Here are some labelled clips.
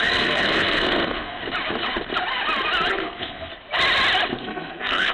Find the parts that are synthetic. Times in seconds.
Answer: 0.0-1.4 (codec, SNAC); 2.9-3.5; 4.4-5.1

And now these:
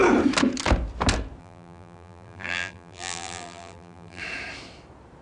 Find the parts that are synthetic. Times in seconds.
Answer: 1.4-4.2 (vocoder, BigVGAN v2)

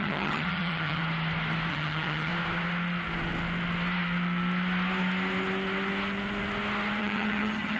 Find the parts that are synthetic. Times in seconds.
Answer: 0.0-1.0 (vocoder, HiFi-GAN); 1.7-2.3; 7.0-7.8